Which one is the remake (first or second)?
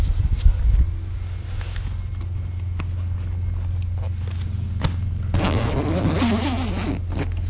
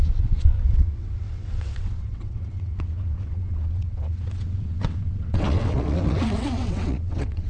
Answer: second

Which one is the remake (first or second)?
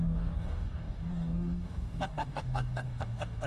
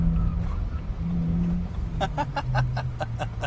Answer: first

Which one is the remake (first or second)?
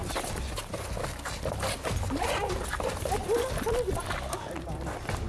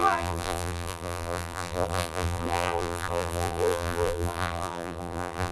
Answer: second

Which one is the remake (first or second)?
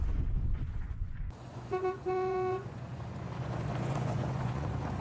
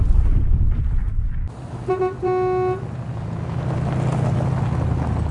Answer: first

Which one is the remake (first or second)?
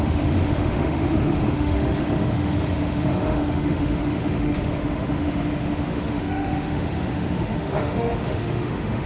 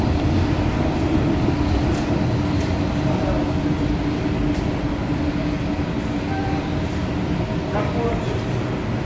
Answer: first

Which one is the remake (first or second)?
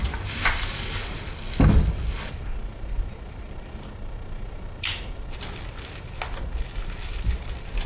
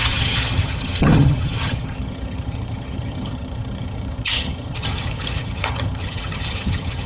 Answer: second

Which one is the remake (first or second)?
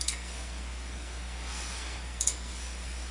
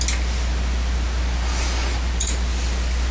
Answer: first